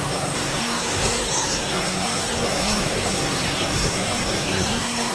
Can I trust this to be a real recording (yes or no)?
no